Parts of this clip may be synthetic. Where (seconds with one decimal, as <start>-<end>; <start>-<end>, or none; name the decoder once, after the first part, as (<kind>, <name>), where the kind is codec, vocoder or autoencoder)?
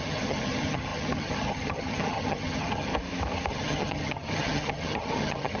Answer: 0.0-2.9 (vocoder, HiFi-GAN); 3.5-5.6